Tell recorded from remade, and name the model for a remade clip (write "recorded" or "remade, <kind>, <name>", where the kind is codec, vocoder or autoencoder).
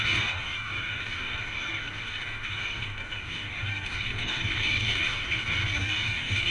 remade, codec, DAC